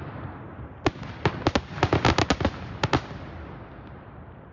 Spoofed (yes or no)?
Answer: no